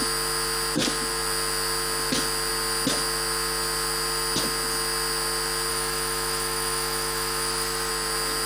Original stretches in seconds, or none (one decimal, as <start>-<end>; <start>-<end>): 0.0-5.7; 7.9-8.5